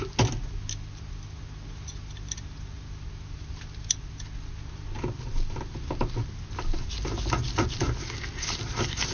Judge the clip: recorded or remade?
recorded